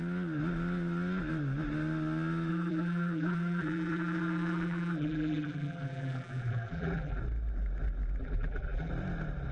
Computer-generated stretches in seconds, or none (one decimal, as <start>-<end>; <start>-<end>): 2.5-7.2; 8.2-8.9